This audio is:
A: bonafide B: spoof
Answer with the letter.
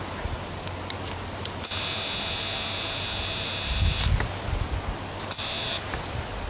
A